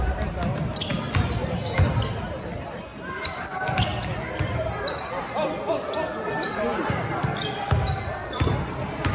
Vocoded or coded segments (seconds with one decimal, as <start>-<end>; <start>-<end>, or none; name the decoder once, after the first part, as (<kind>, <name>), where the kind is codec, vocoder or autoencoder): none